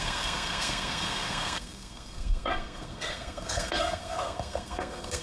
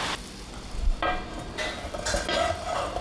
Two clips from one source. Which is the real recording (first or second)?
second